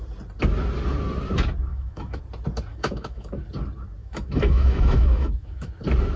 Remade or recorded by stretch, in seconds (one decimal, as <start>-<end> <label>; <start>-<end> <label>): 0.0-1.7 recorded; 1.7-2.2 remade; 2.2-2.7 recorded; 2.7-3.4 remade; 3.4-4.0 recorded; 4.0-5.7 remade; 5.7-6.2 recorded